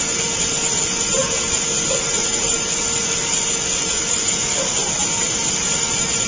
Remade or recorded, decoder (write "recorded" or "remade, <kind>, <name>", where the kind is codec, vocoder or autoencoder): recorded